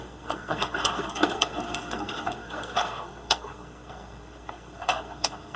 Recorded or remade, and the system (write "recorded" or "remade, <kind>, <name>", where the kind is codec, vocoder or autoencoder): remade, codec, SNAC